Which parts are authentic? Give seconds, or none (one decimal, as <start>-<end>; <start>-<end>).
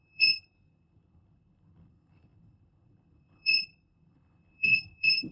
none